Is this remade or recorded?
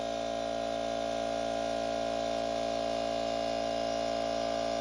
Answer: recorded